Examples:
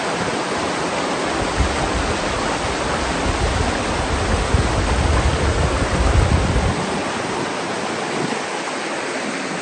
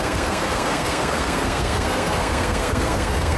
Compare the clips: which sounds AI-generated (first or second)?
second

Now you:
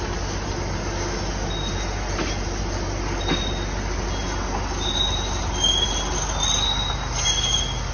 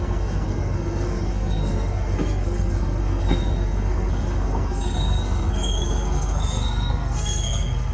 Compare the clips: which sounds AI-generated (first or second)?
second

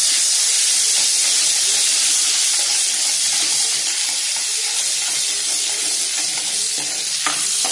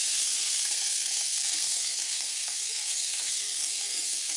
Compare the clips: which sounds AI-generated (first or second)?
second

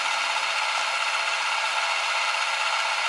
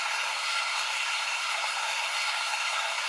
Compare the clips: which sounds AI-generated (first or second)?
second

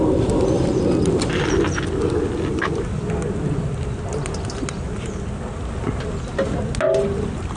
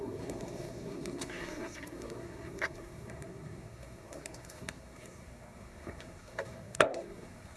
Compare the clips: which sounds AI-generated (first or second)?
second